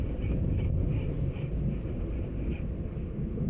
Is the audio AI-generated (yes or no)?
no